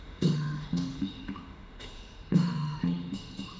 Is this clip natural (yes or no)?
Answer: no